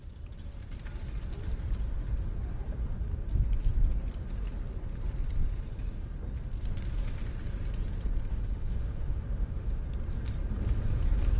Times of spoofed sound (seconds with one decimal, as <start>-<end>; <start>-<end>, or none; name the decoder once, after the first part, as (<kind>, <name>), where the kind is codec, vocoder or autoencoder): 8.3-9.8 (autoencoder, DAC-VAE)